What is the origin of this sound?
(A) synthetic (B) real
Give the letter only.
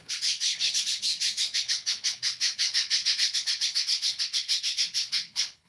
A